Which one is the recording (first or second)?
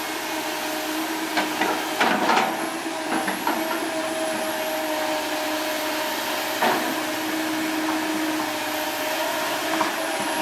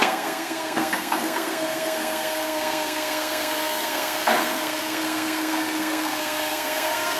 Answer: first